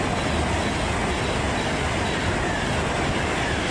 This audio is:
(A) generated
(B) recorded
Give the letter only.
B